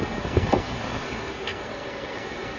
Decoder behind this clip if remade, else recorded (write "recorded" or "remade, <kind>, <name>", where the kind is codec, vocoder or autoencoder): remade, codec, SNAC